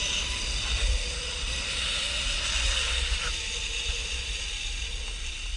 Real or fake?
real